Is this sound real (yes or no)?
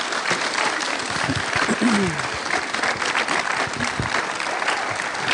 yes